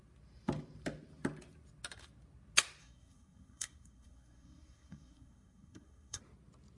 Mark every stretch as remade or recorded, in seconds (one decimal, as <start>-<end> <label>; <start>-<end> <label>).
0.0-2.8 recorded; 2.8-6.2 remade; 6.2-6.8 recorded